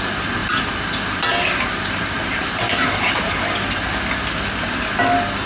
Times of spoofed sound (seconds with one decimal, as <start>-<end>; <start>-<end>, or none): 0.4-3.4